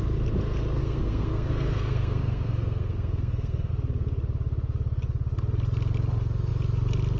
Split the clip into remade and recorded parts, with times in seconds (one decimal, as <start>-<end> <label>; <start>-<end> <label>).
0.0-0.8 recorded; 0.8-3.7 remade; 3.7-7.2 recorded